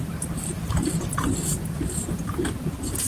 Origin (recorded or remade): remade